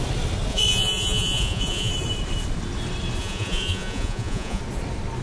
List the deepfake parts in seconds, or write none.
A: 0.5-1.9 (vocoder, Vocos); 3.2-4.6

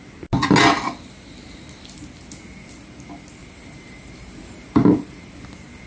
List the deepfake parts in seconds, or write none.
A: 3.4-5.3 (vocoder, BigVGAN v2)

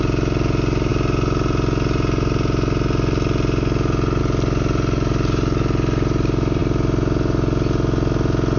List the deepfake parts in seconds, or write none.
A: none

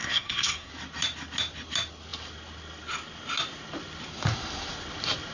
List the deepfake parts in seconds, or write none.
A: 0.0-0.7 (codec, SNAC)

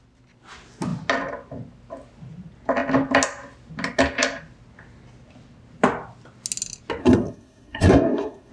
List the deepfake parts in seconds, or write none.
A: 7.0-8.5 (codec, SNAC)

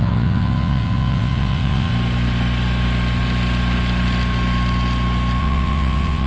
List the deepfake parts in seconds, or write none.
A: 0.0-1.9 (vocoder, WaveNeXt); 5.4-6.3

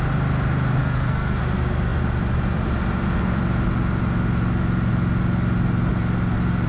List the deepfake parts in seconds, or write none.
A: 0.8-1.4 (codec, SNAC)

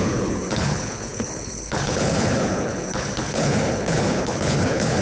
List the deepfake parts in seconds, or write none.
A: 0.0-5.0 (codec, HILCodec)